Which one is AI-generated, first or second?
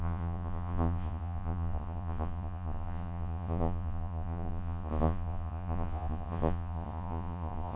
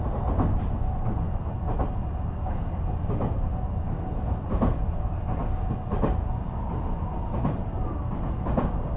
first